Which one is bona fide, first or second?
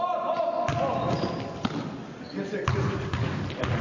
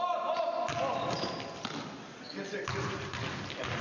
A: second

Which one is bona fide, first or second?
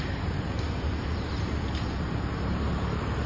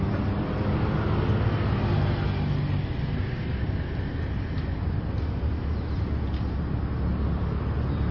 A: second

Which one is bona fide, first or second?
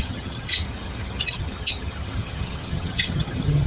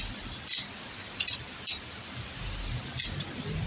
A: second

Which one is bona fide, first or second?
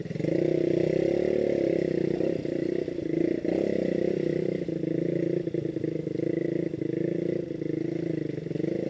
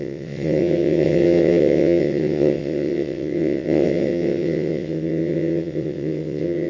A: first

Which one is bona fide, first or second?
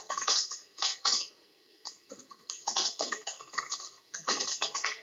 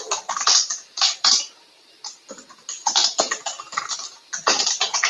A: second